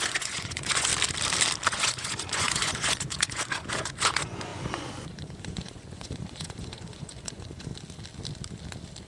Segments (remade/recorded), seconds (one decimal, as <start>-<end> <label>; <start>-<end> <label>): 0.0-0.9 remade; 0.9-1.7 recorded; 1.7-7.7 remade; 7.7-9.1 recorded